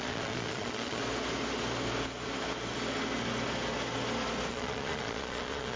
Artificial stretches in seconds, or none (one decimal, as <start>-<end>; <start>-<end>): 0.0-1.0; 4.5-5.8